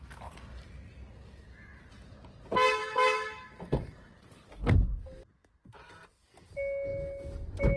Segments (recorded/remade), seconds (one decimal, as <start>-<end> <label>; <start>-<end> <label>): 0.0-2.8 recorded; 2.8-4.1 remade; 4.1-7.8 recorded